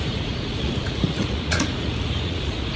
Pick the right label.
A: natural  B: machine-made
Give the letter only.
B